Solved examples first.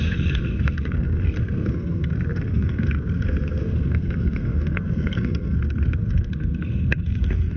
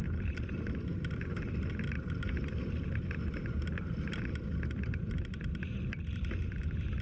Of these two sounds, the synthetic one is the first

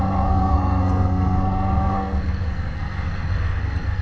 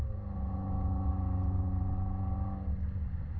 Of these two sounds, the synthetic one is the first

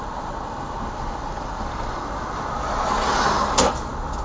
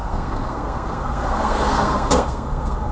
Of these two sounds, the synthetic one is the second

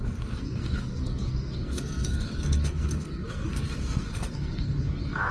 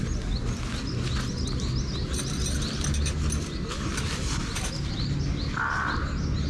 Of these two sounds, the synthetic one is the first